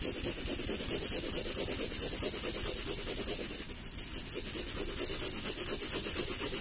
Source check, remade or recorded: recorded